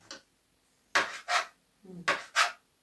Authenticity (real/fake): real